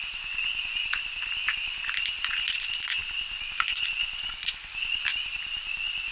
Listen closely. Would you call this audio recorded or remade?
recorded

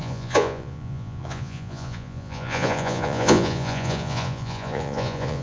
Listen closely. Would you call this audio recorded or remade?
remade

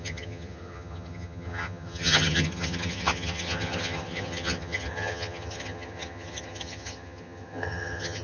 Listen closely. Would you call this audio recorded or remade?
remade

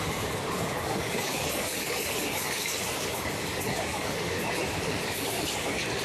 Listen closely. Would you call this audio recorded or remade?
remade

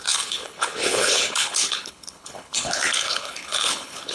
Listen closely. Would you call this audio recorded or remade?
remade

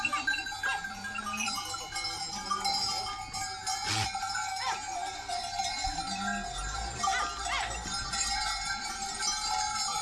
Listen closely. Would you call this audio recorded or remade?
recorded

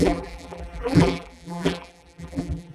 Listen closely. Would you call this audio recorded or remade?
remade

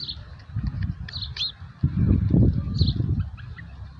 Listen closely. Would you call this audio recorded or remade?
recorded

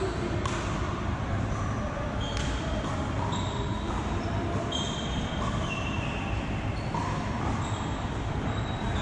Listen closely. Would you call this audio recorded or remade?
recorded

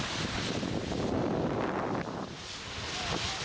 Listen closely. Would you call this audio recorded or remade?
recorded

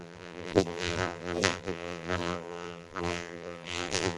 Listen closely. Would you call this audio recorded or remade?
remade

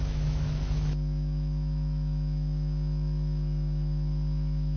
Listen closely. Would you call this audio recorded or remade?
remade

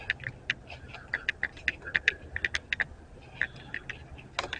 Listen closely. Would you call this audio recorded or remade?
recorded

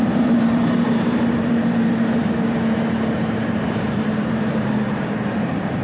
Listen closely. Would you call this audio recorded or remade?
remade